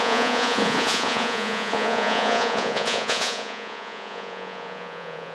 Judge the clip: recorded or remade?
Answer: remade